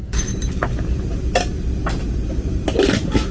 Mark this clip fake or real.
real